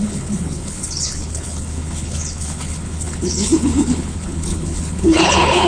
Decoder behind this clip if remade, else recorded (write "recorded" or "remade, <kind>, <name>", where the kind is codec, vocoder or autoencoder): remade, codec, HILCodec